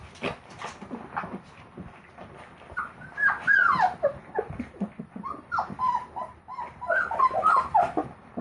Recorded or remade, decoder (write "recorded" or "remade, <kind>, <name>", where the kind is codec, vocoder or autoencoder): recorded